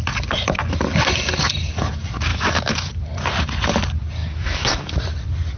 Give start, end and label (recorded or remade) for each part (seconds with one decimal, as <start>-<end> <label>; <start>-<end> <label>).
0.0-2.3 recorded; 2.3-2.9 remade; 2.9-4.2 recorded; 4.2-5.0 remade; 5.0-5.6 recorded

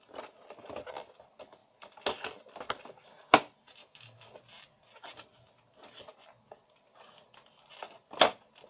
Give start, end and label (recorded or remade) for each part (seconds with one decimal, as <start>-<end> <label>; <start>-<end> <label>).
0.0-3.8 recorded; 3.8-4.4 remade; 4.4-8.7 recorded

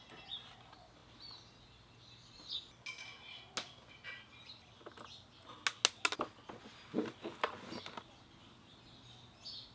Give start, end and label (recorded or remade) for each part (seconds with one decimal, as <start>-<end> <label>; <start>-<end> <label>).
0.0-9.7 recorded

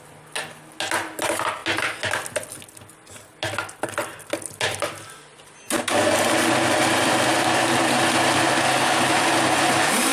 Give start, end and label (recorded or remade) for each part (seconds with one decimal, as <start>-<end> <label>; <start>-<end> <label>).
0.0-10.1 recorded

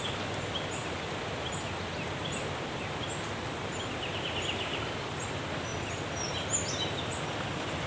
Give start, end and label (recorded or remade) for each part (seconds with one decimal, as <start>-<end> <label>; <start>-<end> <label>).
0.0-7.9 recorded

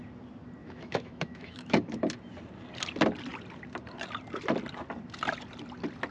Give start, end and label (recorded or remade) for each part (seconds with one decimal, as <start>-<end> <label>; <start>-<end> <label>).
0.0-0.6 recorded; 0.6-2.0 remade; 2.0-6.1 recorded

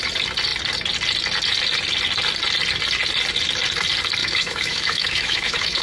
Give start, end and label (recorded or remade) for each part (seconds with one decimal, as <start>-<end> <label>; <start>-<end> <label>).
0.0-4.2 recorded; 4.2-5.8 remade

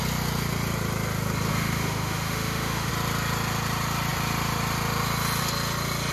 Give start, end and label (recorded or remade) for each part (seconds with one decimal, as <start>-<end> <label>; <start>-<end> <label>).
0.0-1.5 recorded; 1.5-2.9 remade; 2.9-6.1 recorded